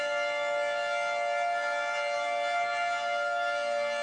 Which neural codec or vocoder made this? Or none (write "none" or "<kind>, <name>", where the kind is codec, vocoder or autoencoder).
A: none